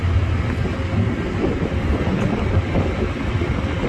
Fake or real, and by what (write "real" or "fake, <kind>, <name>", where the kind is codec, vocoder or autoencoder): real